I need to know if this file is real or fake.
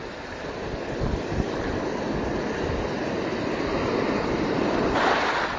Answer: real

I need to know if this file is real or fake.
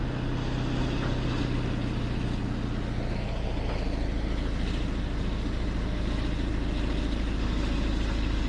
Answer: real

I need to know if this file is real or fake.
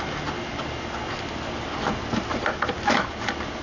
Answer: real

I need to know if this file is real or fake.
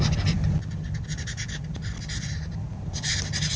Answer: real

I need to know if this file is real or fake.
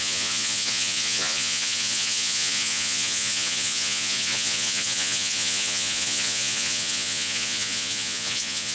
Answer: fake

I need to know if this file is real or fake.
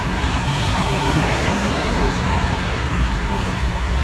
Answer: fake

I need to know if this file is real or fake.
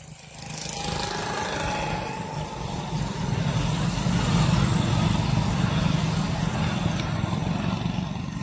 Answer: real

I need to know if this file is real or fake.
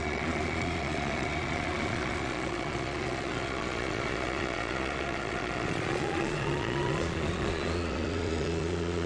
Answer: fake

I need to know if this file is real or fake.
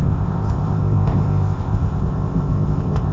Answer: fake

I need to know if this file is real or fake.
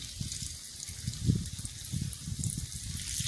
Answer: real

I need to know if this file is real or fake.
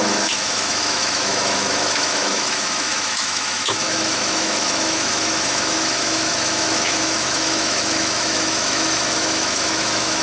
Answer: fake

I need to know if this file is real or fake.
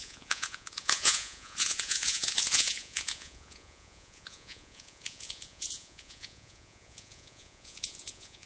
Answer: fake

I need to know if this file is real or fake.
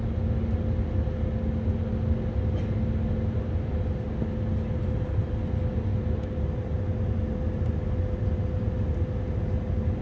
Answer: real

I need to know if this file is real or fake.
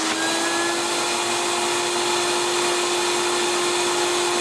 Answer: real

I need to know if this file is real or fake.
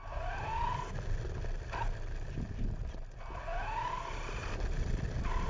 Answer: real